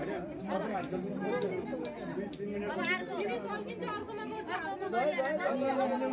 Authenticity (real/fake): real